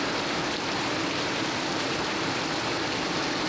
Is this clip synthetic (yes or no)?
no